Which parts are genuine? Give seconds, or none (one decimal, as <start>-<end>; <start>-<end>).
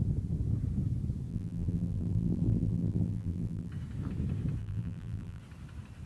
0.0-1.3; 3.7-4.6; 5.4-6.1